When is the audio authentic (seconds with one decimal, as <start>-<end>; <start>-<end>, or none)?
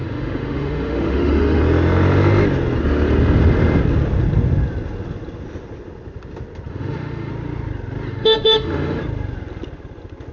1.6-6.7; 7.3-8.1; 9.0-10.3